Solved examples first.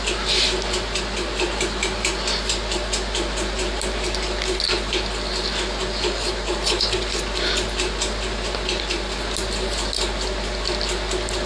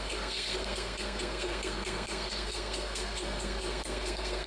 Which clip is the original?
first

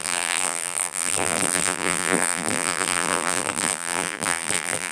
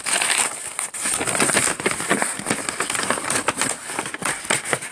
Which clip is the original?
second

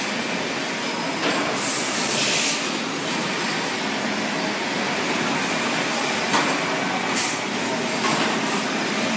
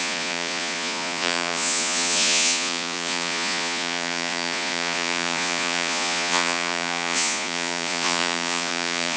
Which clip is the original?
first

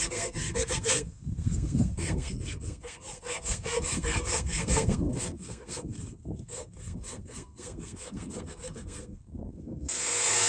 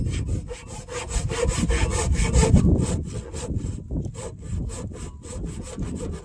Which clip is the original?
second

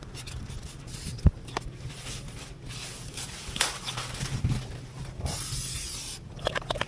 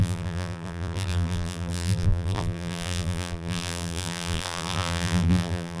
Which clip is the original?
first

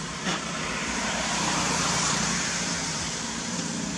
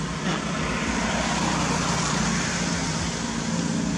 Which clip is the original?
second